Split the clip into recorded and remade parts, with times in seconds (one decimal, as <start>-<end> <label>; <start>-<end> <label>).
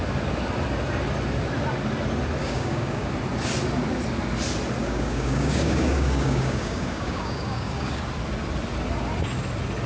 0.0-2.4 recorded; 2.4-3.1 remade; 3.1-4.8 recorded; 4.8-8.0 remade; 8.0-9.9 recorded